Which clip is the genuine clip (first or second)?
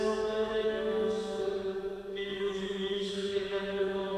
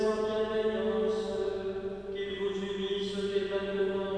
second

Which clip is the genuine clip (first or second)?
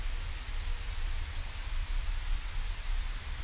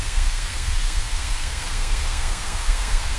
first